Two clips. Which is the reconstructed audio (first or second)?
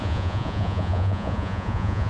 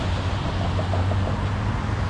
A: first